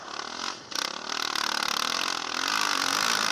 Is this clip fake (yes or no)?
no